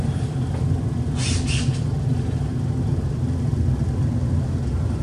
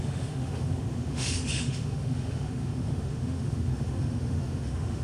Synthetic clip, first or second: second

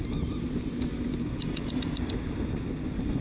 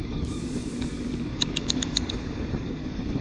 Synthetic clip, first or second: second